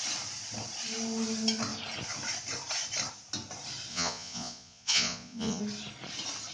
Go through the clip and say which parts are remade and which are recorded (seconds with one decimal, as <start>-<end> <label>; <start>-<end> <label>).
0.0-3.9 recorded; 3.9-5.6 remade; 5.6-6.5 recorded